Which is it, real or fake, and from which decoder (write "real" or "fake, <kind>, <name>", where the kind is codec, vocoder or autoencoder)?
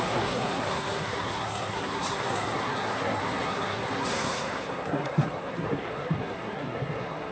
fake, codec, SNAC